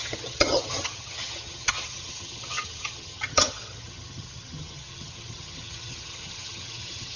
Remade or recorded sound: remade